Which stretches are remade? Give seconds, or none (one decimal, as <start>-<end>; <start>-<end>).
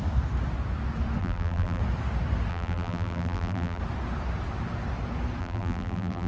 1.2-1.8; 2.5-3.8; 5.4-6.3